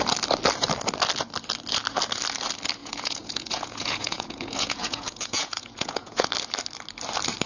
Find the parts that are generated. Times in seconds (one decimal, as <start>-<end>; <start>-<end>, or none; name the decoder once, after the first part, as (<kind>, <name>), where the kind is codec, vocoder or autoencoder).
2.8-6.3 (vocoder, Vocos)